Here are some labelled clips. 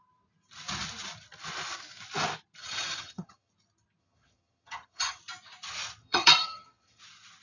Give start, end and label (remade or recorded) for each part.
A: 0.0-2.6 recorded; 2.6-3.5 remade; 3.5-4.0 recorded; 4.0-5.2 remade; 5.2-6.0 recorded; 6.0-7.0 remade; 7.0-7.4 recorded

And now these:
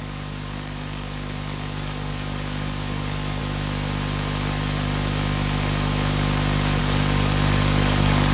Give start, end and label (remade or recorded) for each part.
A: 0.0-3.4 remade; 3.4-6.8 recorded; 6.8-8.3 remade

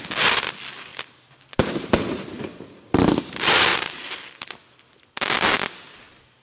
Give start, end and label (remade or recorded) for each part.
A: 0.0-0.9 recorded; 0.9-1.5 remade; 1.5-3.7 recorded; 3.7-4.5 remade; 4.5-6.4 recorded

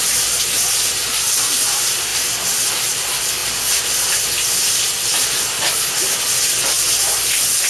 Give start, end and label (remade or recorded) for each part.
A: 0.0-7.7 recorded

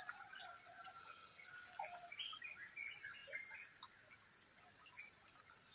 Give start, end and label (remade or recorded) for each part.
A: 0.0-1.0 recorded; 1.0-1.5 remade; 1.5-5.7 recorded

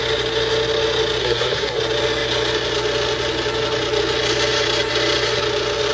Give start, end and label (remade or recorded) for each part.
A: 0.0-1.2 recorded; 1.2-1.8 remade; 1.8-5.9 recorded

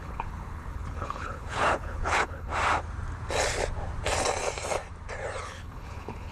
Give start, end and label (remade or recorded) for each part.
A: 0.0-2.5 remade; 2.5-5.4 recorded; 5.4-6.3 remade